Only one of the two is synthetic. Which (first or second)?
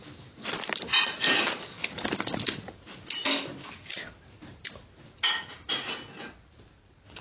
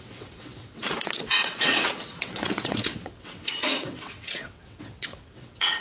second